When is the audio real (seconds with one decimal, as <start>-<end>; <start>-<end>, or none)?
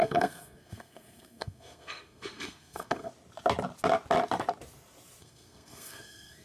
3.1-5.2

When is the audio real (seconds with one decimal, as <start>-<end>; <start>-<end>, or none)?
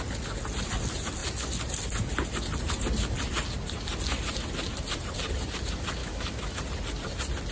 0.0-6.0; 6.6-7.5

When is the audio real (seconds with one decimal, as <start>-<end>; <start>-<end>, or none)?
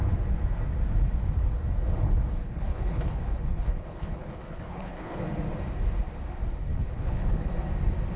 0.0-2.4; 5.2-6.7; 7.5-8.2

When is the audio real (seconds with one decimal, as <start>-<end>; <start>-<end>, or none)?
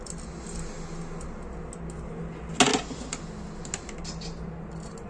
0.0-5.1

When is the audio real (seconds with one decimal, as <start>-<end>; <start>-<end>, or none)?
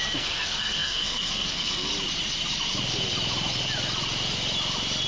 1.9-5.1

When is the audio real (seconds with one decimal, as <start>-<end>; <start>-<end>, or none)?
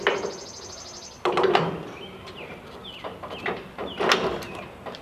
0.0-5.0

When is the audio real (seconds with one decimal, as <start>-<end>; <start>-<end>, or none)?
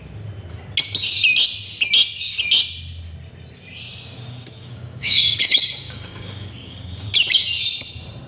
0.0-3.9; 7.1-8.3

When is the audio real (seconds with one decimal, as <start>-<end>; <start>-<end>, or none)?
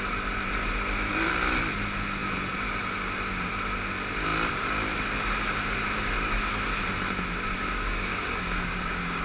0.0-7.6